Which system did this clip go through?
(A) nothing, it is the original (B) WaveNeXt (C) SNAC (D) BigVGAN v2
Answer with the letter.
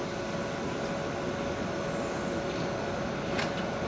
A